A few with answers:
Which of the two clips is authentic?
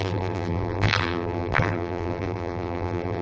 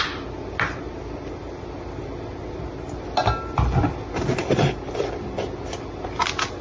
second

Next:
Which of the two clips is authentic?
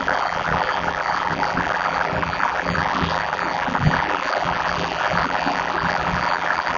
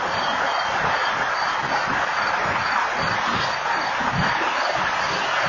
second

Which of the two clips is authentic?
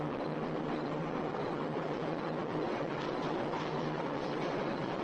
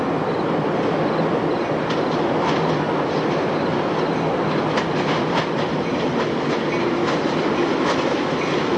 second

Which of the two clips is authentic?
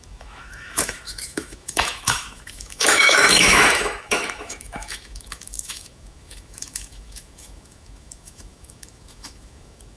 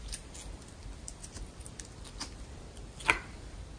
second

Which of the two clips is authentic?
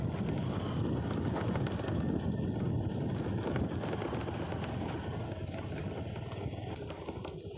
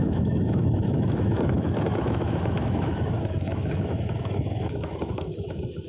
first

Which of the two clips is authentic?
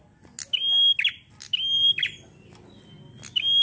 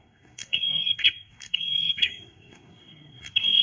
first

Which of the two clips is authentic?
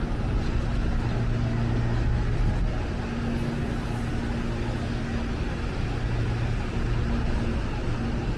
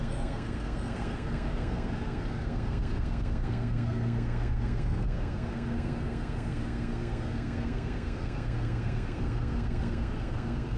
first